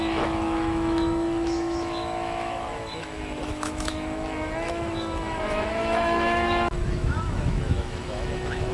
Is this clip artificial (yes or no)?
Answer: yes